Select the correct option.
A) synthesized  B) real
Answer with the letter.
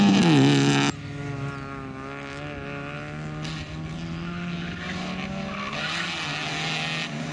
B